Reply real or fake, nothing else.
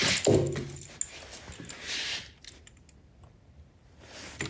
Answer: real